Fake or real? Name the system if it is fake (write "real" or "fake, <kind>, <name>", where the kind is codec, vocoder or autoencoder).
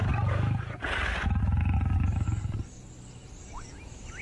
real